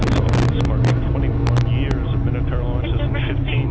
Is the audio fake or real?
real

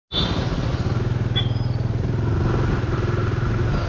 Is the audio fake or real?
real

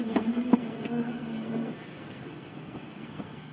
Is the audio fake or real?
fake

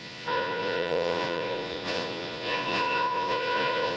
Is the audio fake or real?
fake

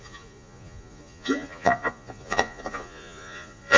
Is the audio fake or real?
fake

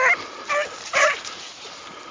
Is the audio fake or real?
real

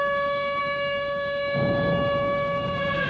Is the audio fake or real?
fake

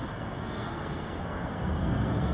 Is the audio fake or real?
fake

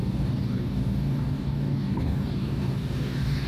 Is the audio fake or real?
fake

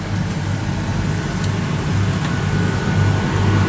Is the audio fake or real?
real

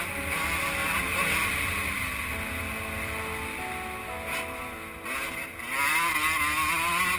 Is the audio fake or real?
real